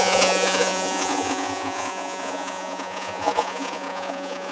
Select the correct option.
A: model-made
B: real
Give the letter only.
A